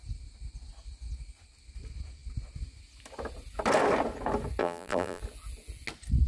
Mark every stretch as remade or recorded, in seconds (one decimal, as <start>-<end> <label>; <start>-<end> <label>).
0.0-4.6 recorded; 4.6-5.2 remade; 5.2-6.3 recorded

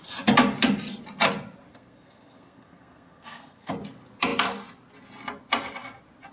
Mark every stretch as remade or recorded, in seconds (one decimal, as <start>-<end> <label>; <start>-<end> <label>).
0.0-1.7 recorded; 1.7-3.7 remade; 3.7-6.3 recorded